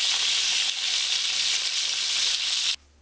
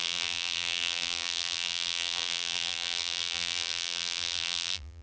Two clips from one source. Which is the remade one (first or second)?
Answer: second